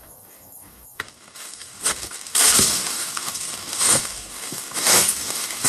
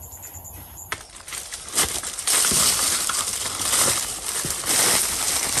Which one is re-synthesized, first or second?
first